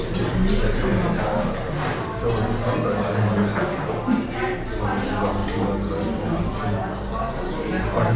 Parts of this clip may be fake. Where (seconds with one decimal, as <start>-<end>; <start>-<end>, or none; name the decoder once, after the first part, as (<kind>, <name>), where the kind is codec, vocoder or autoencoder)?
none